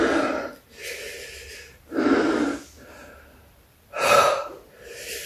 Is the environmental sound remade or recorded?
recorded